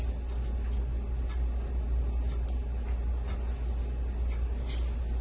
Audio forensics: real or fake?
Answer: real